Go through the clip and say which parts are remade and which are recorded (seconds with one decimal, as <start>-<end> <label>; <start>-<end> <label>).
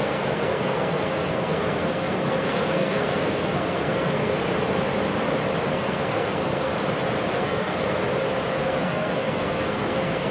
0.0-4.4 remade; 4.4-5.7 recorded; 5.7-6.7 remade; 6.7-7.3 recorded; 7.3-8.0 remade; 8.0-8.5 recorded; 8.5-10.3 remade